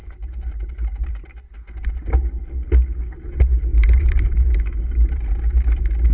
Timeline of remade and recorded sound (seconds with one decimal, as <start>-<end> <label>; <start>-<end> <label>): 0.0-3.7 recorded; 3.7-4.3 remade; 4.3-6.1 recorded